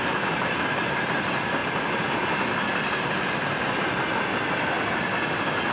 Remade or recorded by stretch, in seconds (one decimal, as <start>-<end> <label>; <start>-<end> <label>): 0.0-5.7 recorded